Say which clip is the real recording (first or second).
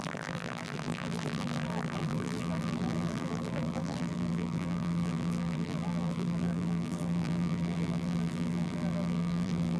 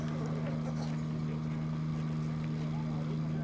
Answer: second